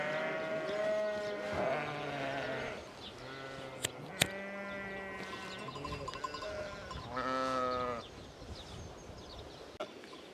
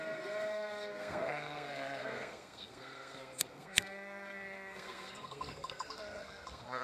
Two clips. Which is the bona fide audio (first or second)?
first